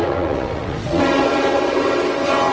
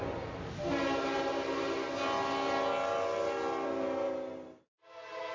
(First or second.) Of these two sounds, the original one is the second